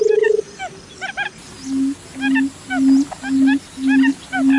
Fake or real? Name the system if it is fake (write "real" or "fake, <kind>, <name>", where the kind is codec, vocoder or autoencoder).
real